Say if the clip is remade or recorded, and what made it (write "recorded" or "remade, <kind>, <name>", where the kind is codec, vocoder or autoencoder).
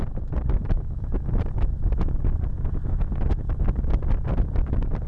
recorded